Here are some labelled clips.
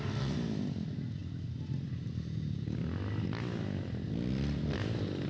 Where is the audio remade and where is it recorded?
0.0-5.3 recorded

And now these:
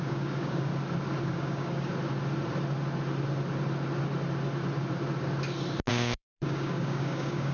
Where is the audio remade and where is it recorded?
0.0-0.7 remade; 0.7-1.2 recorded; 1.2-1.9 remade; 1.9-5.9 recorded; 5.9-7.5 remade

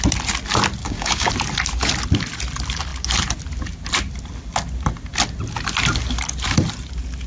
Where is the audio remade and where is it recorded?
0.0-0.8 recorded; 0.8-1.3 remade; 1.3-7.3 recorded

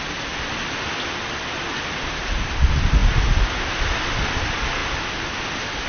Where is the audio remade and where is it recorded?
0.0-5.9 recorded

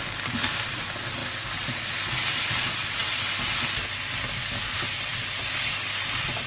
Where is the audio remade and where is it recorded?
0.0-6.5 recorded